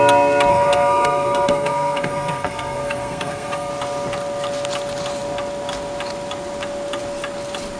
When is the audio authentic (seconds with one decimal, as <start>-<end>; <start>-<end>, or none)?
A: 0.0-0.5; 3.7-7.8